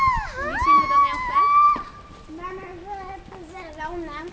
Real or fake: real